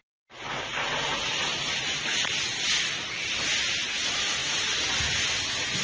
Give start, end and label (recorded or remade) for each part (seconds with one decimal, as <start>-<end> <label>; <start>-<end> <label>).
0.0-5.8 recorded